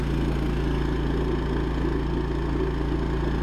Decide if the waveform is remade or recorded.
recorded